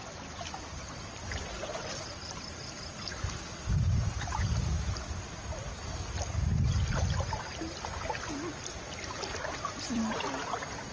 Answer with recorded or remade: recorded